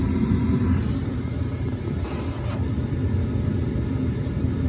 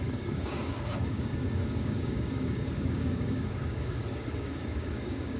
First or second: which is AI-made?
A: second